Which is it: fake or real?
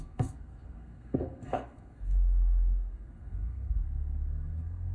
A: fake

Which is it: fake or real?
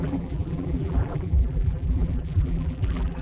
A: fake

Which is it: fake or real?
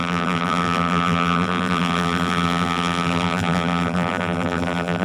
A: fake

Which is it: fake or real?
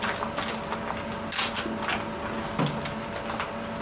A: real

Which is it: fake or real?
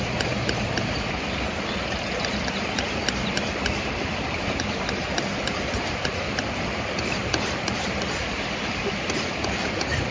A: fake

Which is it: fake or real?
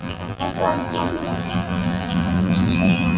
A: fake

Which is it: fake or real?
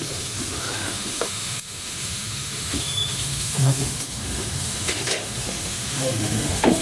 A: fake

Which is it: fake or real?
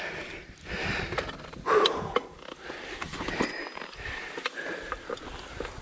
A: real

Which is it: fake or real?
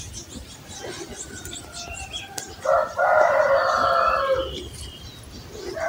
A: real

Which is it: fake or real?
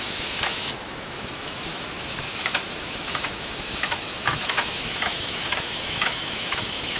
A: fake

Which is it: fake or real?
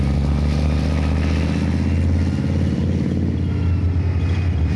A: real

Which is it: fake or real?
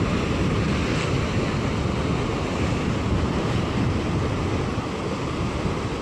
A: real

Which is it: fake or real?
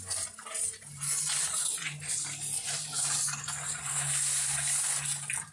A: real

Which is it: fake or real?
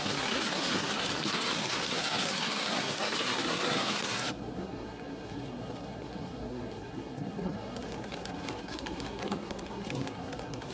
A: fake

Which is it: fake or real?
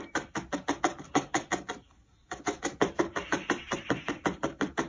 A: fake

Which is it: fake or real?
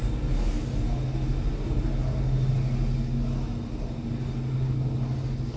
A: real